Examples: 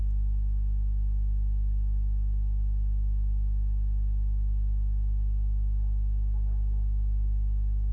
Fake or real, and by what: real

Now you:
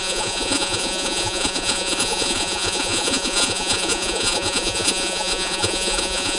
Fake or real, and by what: fake, vocoder, Vocos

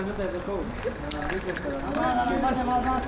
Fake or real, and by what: real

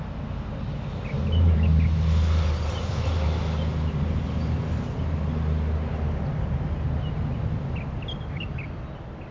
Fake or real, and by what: real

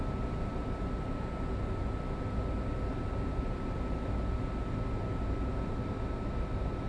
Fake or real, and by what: real